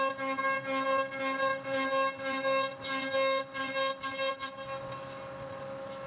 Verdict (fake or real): real